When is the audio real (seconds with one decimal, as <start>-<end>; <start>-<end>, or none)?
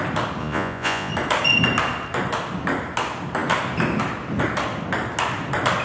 0.0-0.4; 1.1-5.8